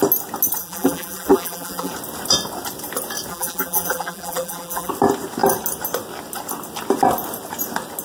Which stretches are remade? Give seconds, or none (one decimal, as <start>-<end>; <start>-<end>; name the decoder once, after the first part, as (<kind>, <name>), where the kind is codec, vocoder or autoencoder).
0.6-1.9 (vocoder, BigVGAN v2); 3.3-4.9